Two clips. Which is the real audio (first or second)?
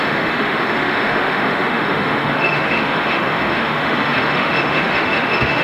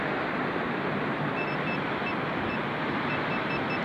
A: second